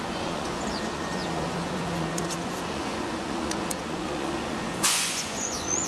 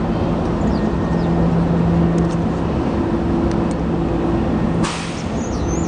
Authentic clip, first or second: second